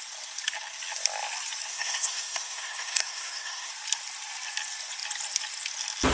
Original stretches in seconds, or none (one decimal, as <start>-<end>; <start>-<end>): 0.0-1.7; 3.7-6.1